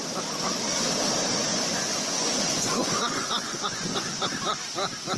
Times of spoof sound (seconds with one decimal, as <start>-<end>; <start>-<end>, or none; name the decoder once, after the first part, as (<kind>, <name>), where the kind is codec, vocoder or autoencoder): 1.5-4.3 (vocoder, Vocos)